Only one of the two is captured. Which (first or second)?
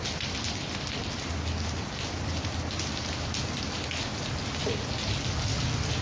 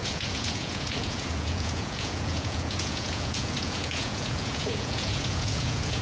first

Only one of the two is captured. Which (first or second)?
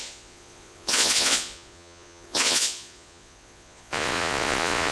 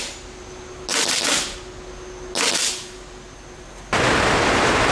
second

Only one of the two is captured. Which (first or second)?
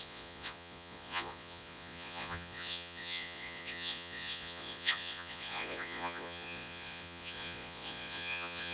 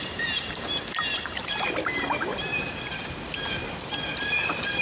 second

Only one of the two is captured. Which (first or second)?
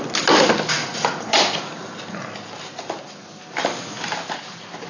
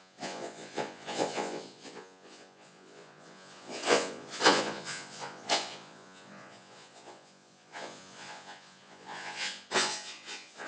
first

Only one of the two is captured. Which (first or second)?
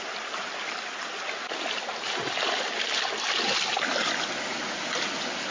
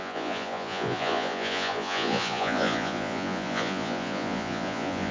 first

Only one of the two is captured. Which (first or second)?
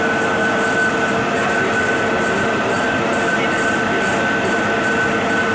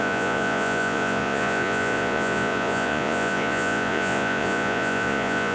first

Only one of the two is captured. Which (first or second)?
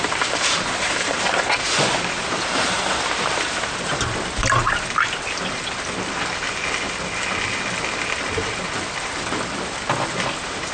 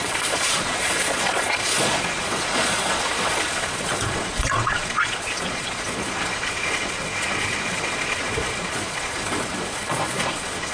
first